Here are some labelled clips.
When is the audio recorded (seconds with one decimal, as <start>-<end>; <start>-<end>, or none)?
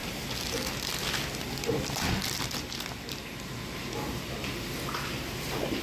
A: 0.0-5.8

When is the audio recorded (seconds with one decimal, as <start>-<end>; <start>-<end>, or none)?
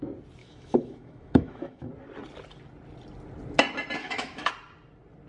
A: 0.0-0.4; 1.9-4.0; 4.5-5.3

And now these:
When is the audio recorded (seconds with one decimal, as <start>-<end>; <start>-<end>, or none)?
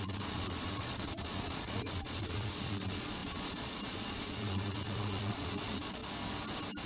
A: 6.0-6.9